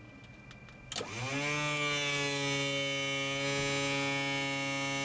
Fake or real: real